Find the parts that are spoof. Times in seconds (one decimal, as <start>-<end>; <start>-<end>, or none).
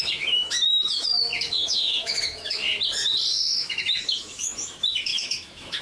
0.0-2.6; 3.3-5.8